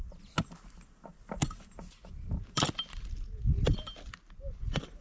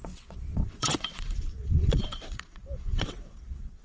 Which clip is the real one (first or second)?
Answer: first